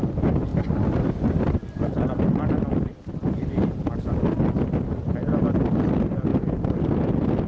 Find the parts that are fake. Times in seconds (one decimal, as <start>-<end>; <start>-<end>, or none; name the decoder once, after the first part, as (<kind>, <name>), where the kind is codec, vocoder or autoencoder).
0.5-4.9 (vocoder, BigVGAN v2); 6.3-6.9